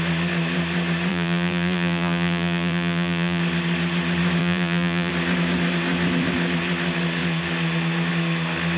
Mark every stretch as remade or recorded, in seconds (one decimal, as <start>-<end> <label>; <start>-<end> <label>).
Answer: 0.0-1.1 recorded; 1.1-3.4 remade; 3.4-4.4 recorded; 4.4-5.1 remade; 5.1-8.8 recorded